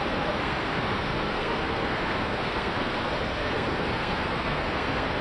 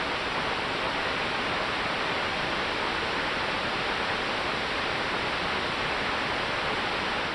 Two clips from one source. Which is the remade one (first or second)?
first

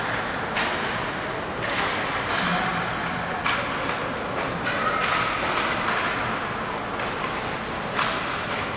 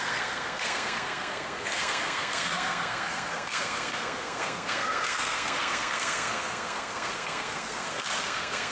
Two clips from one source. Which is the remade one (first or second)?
second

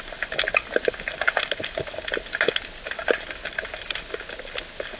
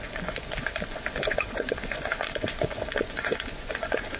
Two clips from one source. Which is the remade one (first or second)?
second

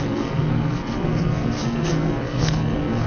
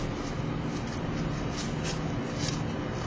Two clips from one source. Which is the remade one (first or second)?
first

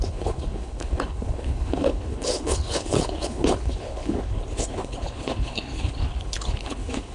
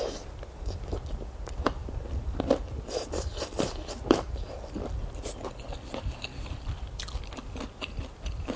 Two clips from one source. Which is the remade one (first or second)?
first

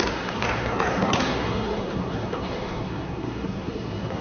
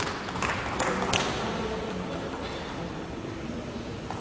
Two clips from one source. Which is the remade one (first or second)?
first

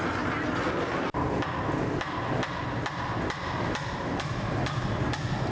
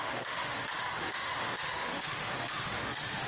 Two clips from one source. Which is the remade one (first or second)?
second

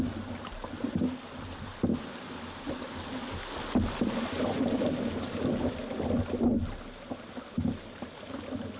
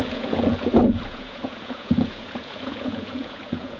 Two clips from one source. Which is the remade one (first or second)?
second